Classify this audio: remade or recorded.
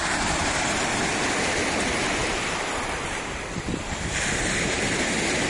recorded